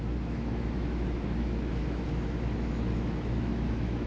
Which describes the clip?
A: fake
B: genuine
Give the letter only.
A